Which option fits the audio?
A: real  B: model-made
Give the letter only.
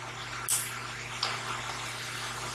A